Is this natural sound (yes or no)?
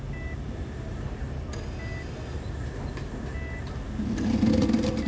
yes